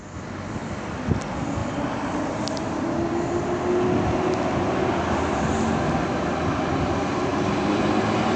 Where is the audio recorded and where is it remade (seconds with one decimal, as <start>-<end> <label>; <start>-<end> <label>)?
0.0-8.4 recorded